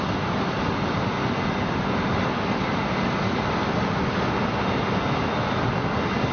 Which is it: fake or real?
real